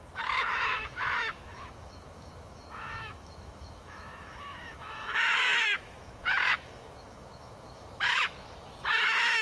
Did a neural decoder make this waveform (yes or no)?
yes